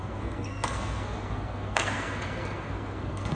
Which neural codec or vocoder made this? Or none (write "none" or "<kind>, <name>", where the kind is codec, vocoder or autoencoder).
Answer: codec, SNAC